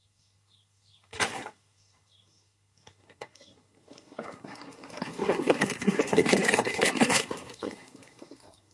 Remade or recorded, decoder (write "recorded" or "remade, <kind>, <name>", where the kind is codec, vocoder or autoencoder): remade, codec, SNAC